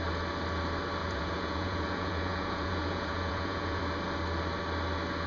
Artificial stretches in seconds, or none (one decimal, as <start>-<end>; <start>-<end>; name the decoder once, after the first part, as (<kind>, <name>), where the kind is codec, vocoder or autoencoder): 1.0-3.8 (vocoder, Vocos)